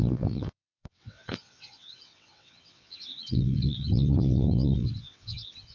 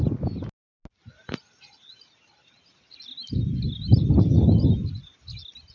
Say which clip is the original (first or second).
second